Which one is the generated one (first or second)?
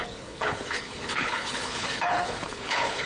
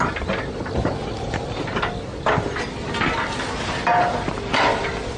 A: first